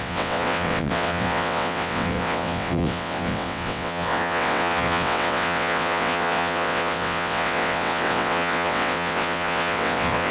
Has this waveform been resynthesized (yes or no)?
yes